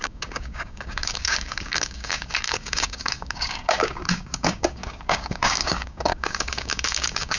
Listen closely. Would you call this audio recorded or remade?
remade